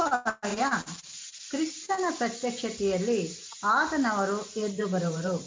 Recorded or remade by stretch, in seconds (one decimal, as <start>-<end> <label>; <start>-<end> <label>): 0.0-0.5 recorded; 0.5-1.0 remade; 1.0-4.6 recorded; 4.6-5.5 remade